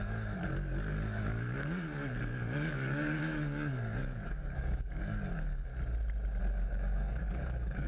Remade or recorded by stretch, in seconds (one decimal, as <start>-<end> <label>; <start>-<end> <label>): 0.0-5.7 remade; 5.7-6.4 recorded; 6.4-7.9 remade